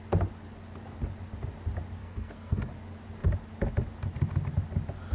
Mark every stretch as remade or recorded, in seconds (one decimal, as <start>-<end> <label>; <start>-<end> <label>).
0.0-2.0 recorded; 2.0-2.7 remade; 2.7-5.1 recorded